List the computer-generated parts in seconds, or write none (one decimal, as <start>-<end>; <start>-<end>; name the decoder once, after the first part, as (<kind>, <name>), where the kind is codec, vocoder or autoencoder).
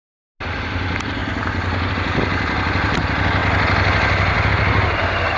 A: none